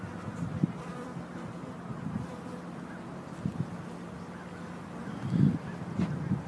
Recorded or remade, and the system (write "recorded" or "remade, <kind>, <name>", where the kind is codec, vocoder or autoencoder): recorded